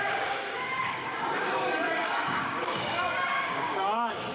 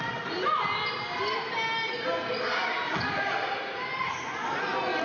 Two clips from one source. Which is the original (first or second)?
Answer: second